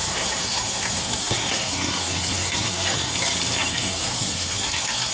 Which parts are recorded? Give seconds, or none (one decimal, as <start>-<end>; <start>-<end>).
3.1-3.7